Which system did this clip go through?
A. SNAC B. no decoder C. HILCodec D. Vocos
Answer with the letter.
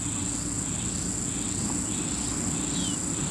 B